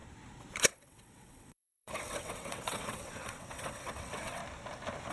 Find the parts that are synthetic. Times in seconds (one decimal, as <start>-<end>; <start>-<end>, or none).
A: 0.6-4.4